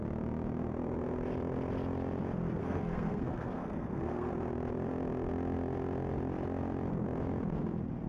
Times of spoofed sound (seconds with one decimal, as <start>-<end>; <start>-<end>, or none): 2.6-4.3